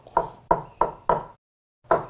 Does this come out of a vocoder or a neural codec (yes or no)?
no